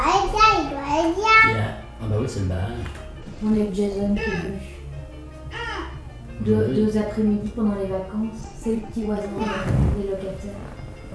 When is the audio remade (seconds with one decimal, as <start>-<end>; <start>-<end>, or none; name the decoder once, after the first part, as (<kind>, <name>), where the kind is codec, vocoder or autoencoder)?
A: 3.2-4.5 (vocoder, Vocos); 8.4-9.2